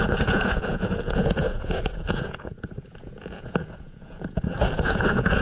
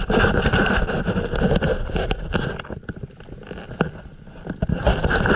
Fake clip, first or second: first